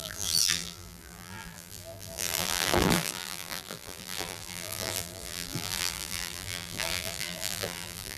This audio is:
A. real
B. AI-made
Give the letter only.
B